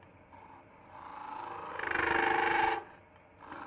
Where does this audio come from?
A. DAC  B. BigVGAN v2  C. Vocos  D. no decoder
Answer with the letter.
D